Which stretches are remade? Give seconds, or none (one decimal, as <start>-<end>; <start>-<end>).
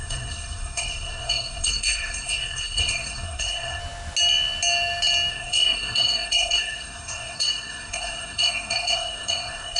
0.0-3.8; 5.3-9.8